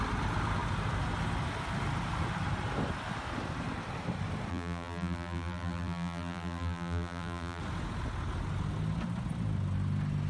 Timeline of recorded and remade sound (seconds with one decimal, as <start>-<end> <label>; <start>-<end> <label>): 0.0-4.5 recorded; 4.5-7.6 remade; 7.6-10.3 recorded